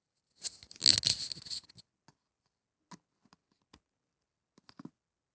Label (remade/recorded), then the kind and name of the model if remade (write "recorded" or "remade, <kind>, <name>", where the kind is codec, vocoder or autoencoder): recorded